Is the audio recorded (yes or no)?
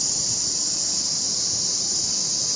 yes